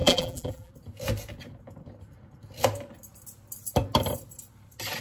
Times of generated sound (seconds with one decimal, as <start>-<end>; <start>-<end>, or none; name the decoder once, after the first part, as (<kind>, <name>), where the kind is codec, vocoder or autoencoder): 0.0-0.7 (vocoder, BigVGAN v2)